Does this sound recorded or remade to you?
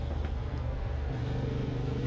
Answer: remade